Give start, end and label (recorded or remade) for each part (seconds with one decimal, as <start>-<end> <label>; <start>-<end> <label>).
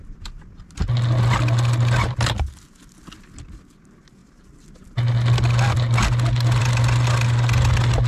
0.0-8.1 recorded